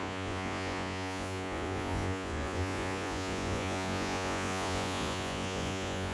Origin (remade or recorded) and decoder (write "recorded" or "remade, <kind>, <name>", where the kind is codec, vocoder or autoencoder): remade, vocoder, Vocos